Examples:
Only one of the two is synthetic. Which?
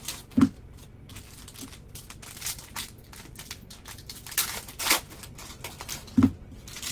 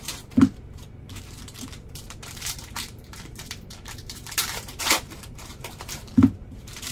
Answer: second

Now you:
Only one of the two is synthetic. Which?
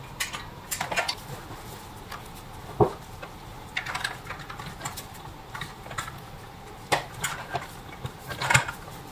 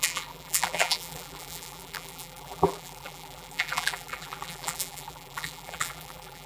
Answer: second